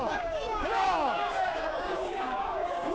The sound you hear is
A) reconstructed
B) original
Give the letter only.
A